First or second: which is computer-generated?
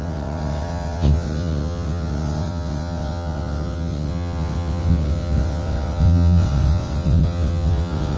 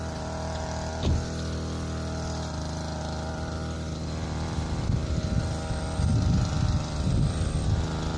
first